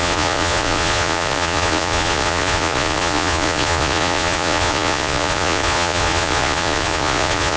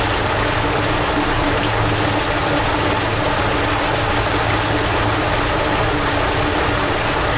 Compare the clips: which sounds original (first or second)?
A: second